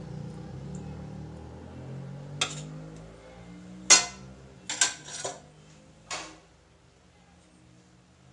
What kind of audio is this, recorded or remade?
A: recorded